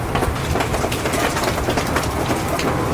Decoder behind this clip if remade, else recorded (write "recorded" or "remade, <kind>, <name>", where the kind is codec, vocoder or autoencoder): recorded